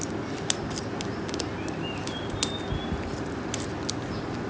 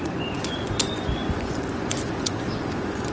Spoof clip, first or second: second